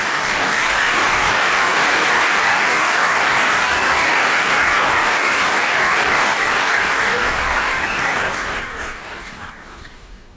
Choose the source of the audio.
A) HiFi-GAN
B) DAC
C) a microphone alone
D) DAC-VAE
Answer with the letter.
B